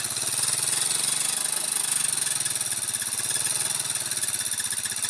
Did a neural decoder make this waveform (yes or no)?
no